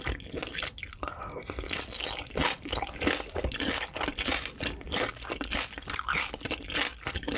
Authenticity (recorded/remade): recorded